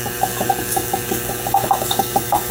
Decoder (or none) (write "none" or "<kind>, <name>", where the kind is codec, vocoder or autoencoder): codec, DAC